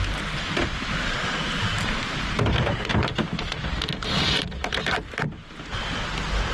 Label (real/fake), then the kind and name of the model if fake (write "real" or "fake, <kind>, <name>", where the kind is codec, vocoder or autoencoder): real